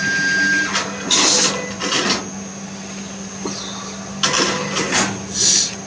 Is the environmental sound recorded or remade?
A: recorded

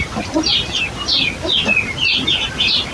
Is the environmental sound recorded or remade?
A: recorded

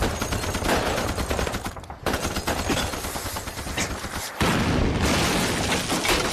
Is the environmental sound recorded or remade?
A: recorded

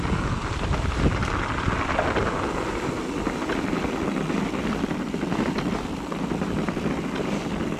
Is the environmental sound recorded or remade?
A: recorded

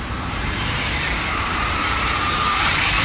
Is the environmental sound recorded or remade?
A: remade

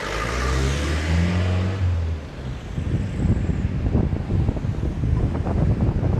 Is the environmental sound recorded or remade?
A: recorded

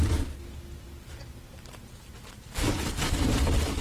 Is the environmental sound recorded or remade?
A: recorded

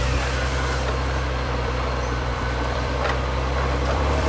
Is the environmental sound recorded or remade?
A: remade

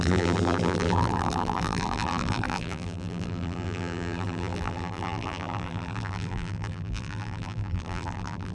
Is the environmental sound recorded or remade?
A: remade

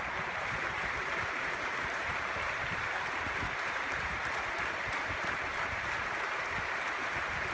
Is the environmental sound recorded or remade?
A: remade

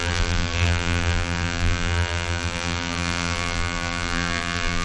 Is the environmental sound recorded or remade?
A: remade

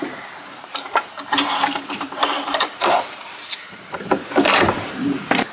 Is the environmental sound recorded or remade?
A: remade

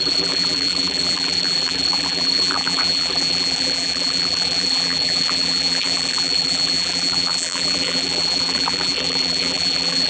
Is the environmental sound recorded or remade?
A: remade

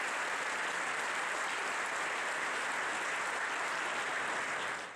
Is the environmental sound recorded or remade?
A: recorded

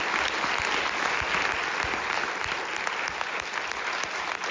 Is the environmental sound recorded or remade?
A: recorded